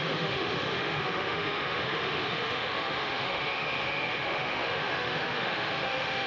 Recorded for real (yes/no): no